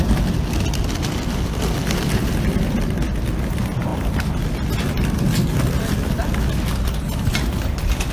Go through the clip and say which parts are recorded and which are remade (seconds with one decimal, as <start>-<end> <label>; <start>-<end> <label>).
0.0-8.1 recorded